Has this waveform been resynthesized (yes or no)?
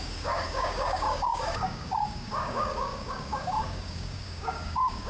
yes